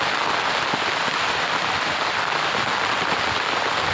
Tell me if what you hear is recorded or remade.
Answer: recorded